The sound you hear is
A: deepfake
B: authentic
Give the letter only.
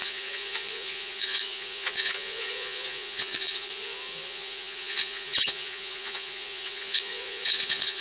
A